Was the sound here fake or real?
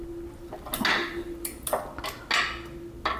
real